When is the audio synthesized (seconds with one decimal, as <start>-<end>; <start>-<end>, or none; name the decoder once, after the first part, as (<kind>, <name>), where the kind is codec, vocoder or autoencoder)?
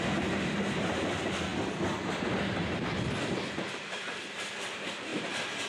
none